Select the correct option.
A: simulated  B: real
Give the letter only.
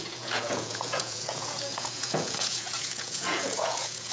A